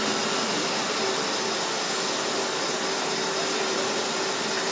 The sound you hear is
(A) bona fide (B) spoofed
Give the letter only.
A